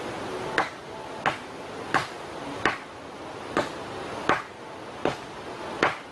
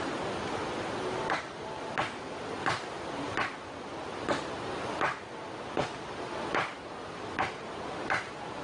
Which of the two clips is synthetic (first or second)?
second